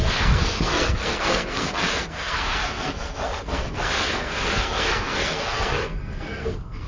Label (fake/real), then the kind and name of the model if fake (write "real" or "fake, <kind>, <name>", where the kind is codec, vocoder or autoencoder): fake, codec, SNAC